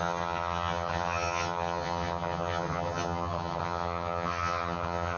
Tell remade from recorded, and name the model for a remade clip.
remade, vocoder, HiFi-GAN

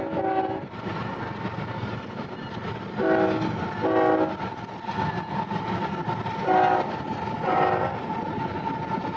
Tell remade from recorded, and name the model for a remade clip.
recorded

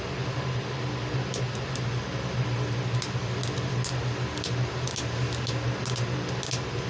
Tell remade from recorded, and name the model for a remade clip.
recorded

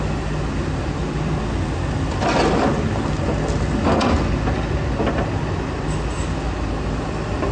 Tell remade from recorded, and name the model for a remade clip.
recorded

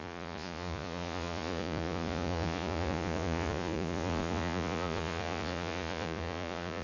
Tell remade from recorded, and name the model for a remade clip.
remade, vocoder, Vocos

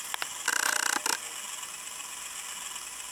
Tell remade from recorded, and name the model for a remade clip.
recorded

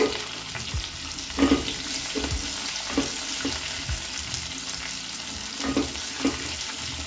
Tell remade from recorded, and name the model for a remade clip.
recorded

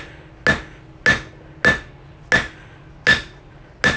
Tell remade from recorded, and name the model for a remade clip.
recorded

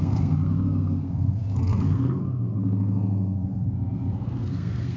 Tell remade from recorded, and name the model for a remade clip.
remade, codec, SNAC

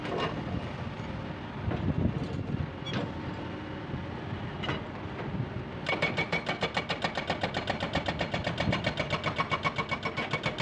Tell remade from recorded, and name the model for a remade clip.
recorded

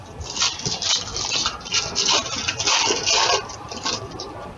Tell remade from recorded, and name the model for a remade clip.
remade, vocoder, BigVGAN v2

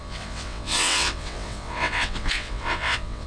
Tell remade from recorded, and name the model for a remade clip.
remade, vocoder, WaveNeXt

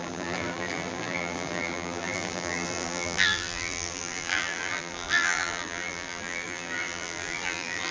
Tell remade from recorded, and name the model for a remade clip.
remade, vocoder, BigVGAN v2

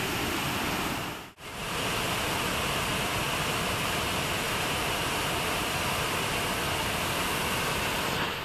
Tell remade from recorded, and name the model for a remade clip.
recorded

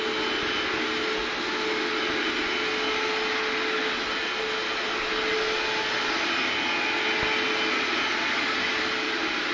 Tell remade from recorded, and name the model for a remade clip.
recorded